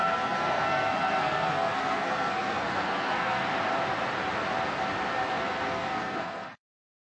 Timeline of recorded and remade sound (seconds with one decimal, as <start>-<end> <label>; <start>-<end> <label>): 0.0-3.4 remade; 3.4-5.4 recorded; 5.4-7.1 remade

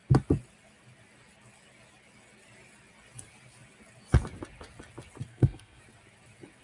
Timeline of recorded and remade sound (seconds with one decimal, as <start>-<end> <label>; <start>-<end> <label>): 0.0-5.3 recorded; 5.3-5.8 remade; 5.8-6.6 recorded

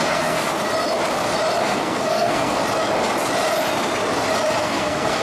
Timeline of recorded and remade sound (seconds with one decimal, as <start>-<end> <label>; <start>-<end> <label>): 0.0-0.5 remade; 0.5-1.6 recorded; 1.6-2.6 remade; 2.6-4.6 recorded; 4.6-5.2 remade

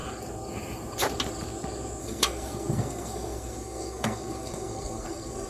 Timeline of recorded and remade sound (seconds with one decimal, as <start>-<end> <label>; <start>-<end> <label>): 0.0-2.0 recorded; 2.0-5.5 remade